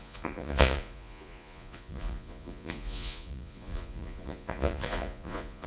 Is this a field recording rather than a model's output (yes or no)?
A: no